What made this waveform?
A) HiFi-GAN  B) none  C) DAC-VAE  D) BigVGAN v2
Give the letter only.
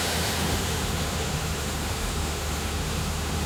C